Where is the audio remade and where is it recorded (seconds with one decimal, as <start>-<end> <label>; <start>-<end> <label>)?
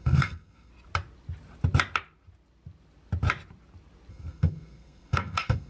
0.0-0.7 remade; 0.7-4.1 recorded; 4.1-5.7 remade